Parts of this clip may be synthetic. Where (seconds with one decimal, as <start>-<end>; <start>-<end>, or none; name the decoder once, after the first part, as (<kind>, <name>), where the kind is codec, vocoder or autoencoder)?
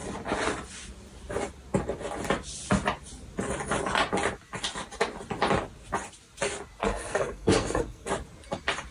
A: 6.8-8.1 (codec, SNAC)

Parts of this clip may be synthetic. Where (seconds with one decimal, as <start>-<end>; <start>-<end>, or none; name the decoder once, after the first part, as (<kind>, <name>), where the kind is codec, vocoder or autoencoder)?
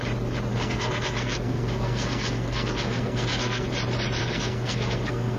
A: 0.5-3.7 (codec, SNAC); 4.2-5.4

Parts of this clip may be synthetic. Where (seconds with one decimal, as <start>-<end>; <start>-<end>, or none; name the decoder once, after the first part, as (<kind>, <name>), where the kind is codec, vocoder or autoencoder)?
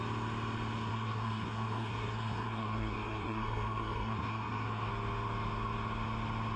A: 0.9-4.9 (codec, SNAC)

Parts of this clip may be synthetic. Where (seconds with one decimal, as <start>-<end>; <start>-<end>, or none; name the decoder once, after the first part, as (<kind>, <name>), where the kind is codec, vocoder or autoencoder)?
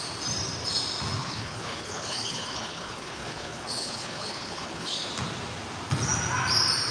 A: 1.2-5.1 (codec, HILCodec)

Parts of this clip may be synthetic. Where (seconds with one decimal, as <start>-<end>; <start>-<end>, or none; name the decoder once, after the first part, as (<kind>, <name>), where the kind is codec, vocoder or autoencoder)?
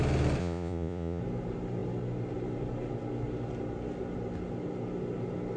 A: 0.4-1.2 (vocoder, Vocos)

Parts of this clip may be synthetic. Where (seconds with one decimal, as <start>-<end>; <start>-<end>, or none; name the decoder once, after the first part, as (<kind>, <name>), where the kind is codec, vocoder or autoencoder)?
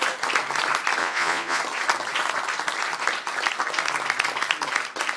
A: 1.0-1.6 (vocoder, Vocos)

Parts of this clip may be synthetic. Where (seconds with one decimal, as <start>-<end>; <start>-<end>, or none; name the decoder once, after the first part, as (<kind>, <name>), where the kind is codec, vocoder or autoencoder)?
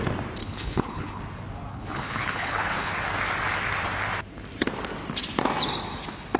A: 0.4-1.2 (codec, HILCodec); 1.7-2.9